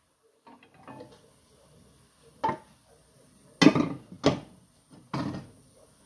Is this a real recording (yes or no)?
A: yes